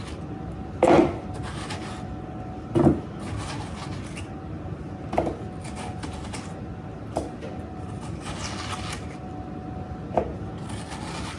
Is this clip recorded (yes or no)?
yes